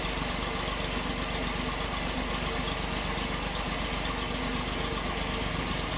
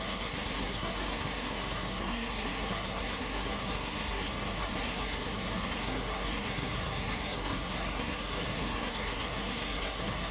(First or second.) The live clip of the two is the first